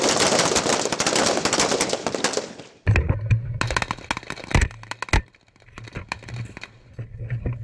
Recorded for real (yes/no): yes